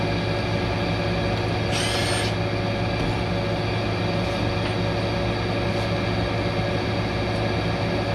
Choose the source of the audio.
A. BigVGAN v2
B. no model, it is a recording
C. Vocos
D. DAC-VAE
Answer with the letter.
B